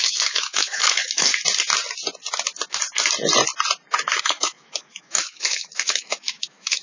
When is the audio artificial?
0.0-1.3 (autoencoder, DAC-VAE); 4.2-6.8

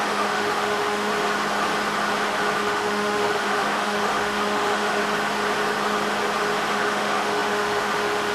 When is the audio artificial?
0.0-1.1 (autoencoder, DAC-VAE); 2.6-5.0; 6.7-8.3

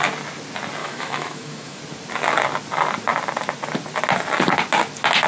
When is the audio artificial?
0.8-1.8 (autoencoder, DAC-VAE)

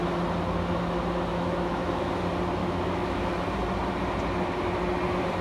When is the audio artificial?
1.3-2.1 (autoencoder, DAC-VAE); 2.6-3.3

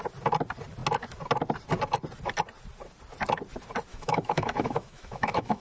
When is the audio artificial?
3.9-5.6 (autoencoder, DAC-VAE)

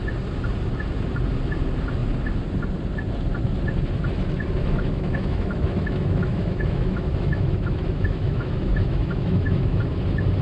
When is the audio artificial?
4.6-9.8 (autoencoder, DAC-VAE)

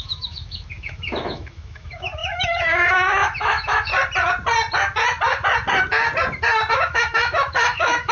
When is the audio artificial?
0.0-3.9 (autoencoder, DAC-VAE); 6.7-8.1

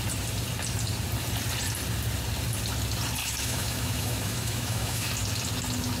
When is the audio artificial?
3.2-5.1 (autoencoder, DAC-VAE)